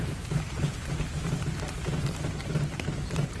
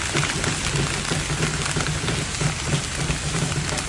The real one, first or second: second